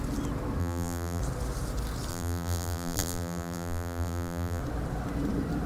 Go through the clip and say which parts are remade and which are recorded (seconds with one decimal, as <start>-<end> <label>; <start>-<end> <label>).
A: 0.0-0.6 recorded; 0.6-1.2 remade; 1.2-2.1 recorded; 2.1-4.6 remade; 4.6-5.7 recorded